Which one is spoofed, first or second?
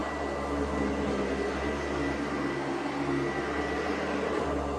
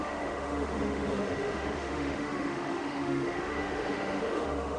second